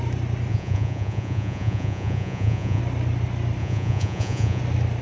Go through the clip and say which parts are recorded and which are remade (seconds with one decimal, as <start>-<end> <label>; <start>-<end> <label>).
0.0-0.5 recorded; 0.5-2.8 remade; 2.8-3.6 recorded; 3.6-4.6 remade; 4.6-5.0 recorded